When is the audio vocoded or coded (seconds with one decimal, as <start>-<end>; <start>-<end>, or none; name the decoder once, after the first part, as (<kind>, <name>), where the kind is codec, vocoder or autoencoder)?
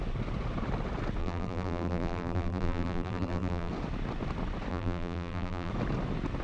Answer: 1.2-3.7 (vocoder, BigVGAN v2); 4.7-5.7